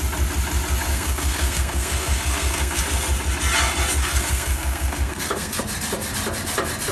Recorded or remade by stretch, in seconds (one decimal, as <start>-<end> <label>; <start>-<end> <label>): 0.0-0.9 recorded; 0.9-2.8 remade; 2.8-4.0 recorded; 4.0-5.6 remade; 5.6-6.9 recorded